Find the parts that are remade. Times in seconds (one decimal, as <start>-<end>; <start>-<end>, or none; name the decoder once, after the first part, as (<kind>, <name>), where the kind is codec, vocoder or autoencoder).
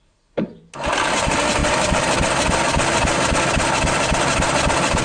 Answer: 0.0-0.5 (codec, SNAC)